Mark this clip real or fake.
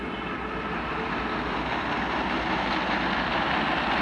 real